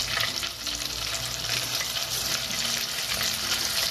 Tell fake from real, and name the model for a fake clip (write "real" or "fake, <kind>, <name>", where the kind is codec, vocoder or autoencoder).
real